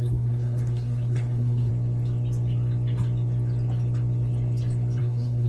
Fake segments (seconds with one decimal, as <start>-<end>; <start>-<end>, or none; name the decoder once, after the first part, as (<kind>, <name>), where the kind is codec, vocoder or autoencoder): 0.0-1.7 (codec, SNAC); 5.0-5.5